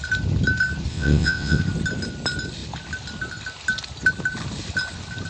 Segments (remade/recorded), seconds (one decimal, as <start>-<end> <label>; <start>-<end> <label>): 0.0-0.9 recorded; 0.9-1.6 remade; 1.6-5.3 recorded